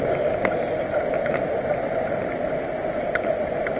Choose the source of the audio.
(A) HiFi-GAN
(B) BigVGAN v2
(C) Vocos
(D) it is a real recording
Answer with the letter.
D